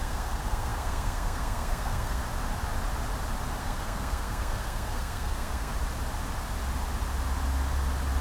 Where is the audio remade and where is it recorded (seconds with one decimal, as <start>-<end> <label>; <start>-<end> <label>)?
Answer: 0.0-2.2 remade; 2.2-3.6 recorded; 3.6-5.7 remade; 5.7-8.2 recorded